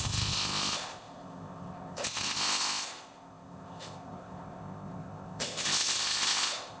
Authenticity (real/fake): fake